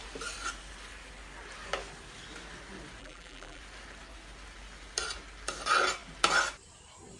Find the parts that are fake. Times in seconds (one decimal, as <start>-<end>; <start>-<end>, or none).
3.0-3.6